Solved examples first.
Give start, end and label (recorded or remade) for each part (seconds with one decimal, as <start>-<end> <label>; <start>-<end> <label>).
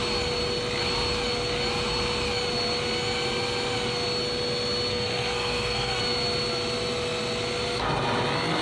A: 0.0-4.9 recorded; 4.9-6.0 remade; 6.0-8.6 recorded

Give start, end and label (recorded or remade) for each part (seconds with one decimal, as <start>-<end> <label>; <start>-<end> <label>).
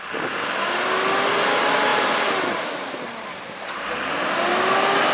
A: 0.0-5.1 recorded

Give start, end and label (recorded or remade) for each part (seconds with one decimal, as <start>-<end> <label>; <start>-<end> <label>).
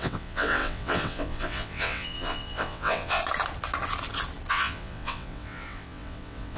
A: 0.0-3.2 remade; 3.2-4.5 recorded; 4.5-6.6 remade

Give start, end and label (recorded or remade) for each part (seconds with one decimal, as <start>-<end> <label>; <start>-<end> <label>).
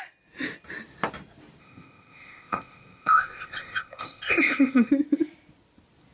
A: 0.0-1.6 recorded; 1.6-4.9 remade; 4.9-6.1 recorded